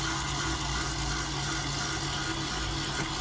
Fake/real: real